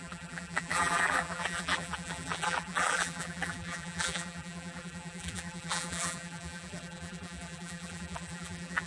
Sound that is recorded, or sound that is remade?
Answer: remade